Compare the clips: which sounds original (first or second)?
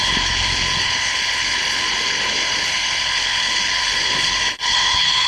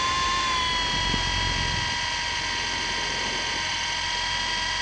second